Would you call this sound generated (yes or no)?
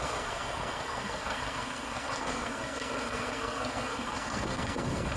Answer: yes